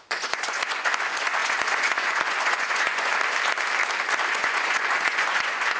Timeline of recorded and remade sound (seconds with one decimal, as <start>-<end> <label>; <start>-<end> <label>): 0.0-3.1 remade; 3.1-4.3 recorded; 4.3-5.8 remade